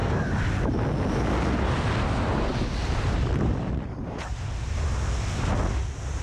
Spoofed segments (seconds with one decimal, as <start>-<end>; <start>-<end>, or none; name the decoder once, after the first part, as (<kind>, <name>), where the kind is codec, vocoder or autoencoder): 2.8-5.0 (vocoder, BigVGAN v2)